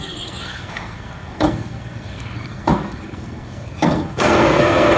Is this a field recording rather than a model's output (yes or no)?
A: no